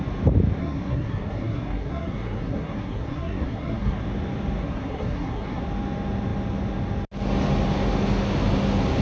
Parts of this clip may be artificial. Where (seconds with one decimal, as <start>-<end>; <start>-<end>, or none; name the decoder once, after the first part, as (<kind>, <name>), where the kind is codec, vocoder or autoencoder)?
0.6-4.0 (codec, SNAC); 4.6-5.6